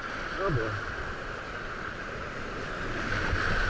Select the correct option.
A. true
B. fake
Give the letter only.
A